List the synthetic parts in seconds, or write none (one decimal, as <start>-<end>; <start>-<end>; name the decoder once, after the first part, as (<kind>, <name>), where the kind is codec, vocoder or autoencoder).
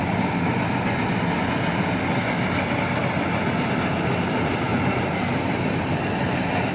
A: 4.7-6.7 (vocoder, BigVGAN v2)